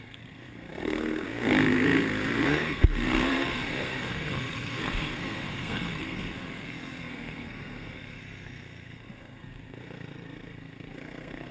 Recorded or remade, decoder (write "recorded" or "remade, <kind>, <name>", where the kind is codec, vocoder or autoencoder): remade, codec, SNAC